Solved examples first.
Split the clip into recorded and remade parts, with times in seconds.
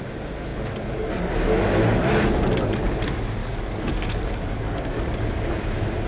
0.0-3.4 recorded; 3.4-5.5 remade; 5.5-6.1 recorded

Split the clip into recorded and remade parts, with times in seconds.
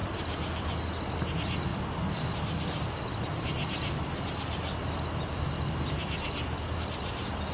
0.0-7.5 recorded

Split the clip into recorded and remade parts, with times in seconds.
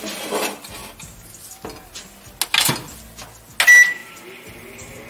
0.0-4.0 recorded; 4.0-5.1 remade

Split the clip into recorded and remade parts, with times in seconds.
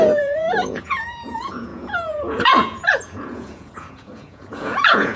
0.0-5.2 remade